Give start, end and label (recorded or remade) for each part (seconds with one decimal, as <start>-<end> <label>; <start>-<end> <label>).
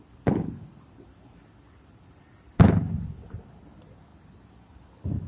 0.0-5.3 remade